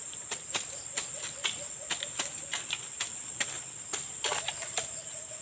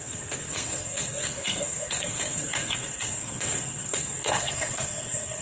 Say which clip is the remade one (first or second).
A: second